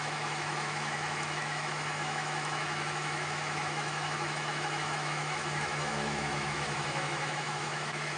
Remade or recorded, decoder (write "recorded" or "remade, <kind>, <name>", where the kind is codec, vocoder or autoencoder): remade, autoencoder, DAC-VAE